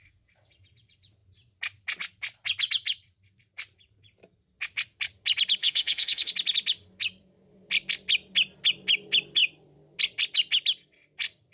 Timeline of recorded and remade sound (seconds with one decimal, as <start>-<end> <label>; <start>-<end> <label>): 0.0-5.6 recorded; 5.6-6.3 remade; 6.3-11.5 recorded